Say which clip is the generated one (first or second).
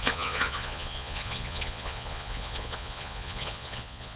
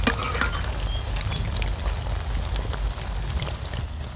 first